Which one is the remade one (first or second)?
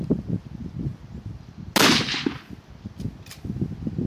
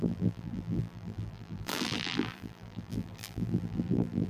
second